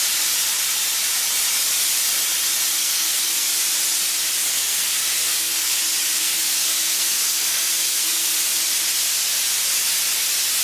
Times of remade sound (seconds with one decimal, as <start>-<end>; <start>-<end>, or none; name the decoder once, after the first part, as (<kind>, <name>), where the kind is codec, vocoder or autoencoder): 2.8-3.5 (codec, SNAC); 4.4-5.8; 6.2-8.3